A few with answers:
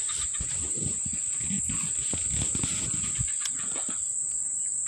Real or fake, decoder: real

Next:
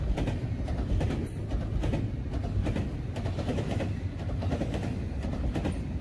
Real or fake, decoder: fake, vocoder, BigVGAN v2